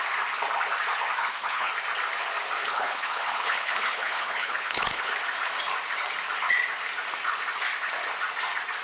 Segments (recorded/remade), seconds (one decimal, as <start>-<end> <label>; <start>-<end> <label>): 0.0-1.2 recorded; 1.2-1.7 remade; 1.7-2.6 recorded; 2.6-5.1 remade; 5.1-8.8 recorded